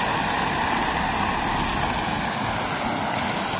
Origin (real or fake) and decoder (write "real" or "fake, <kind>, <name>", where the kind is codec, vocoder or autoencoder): real